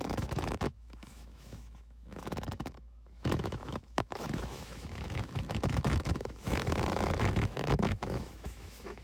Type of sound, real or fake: fake